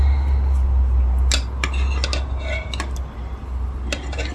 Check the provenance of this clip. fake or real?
real